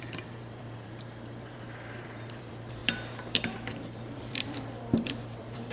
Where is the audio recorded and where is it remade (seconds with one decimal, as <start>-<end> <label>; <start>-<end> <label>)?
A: 0.0-2.8 remade; 2.8-3.7 recorded; 3.7-5.7 remade